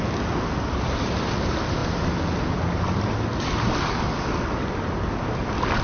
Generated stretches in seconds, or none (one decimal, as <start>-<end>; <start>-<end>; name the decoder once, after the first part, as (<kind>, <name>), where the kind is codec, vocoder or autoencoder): none